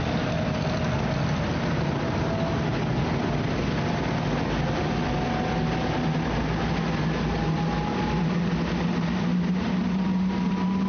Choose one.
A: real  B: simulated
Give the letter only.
A